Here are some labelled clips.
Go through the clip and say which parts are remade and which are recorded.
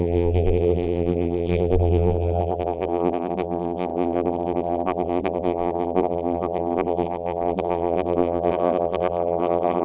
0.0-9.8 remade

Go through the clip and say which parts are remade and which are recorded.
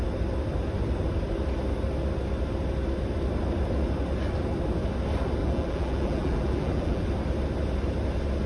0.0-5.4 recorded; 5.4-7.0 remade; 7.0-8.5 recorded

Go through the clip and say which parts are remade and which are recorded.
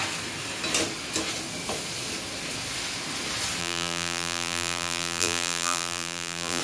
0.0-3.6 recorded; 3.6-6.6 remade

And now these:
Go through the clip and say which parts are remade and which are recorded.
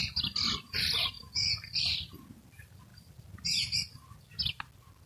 0.0-5.1 recorded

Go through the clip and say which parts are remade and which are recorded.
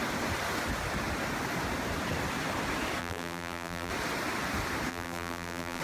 0.0-3.0 recorded; 3.0-3.9 remade; 3.9-4.9 recorded; 4.9-5.8 remade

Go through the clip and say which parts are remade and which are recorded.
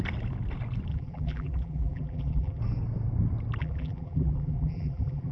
0.0-0.9 recorded; 0.9-2.6 remade; 2.6-3.6 recorded; 3.6-5.3 remade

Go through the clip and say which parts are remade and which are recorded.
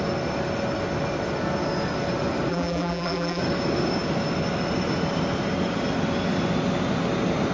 0.0-2.5 recorded; 2.5-3.4 remade; 3.4-7.5 recorded